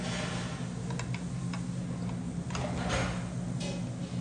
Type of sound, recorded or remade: recorded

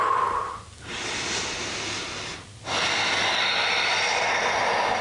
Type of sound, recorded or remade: recorded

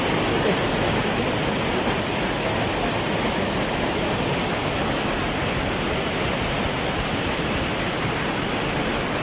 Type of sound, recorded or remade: recorded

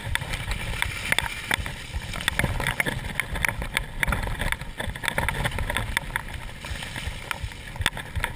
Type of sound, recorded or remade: recorded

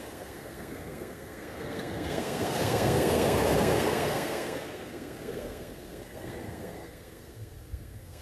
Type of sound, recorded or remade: remade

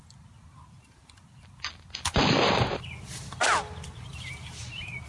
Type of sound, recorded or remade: recorded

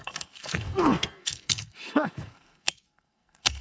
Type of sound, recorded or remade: remade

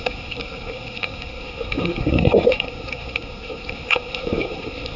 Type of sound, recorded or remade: remade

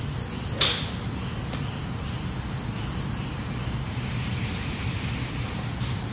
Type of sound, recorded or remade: recorded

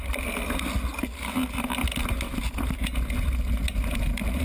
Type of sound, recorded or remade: recorded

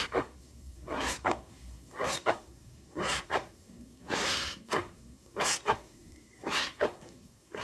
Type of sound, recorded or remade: remade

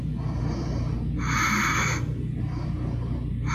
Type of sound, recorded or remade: recorded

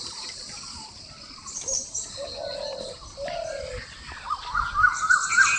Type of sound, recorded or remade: recorded